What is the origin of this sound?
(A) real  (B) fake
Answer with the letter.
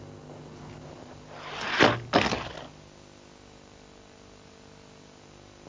A